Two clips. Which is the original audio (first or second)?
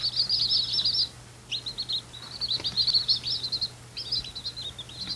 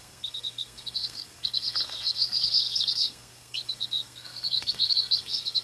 first